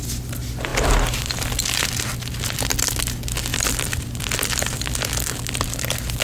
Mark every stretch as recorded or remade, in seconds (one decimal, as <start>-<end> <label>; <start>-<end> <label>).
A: 0.0-3.5 recorded; 3.5-4.9 remade; 4.9-6.2 recorded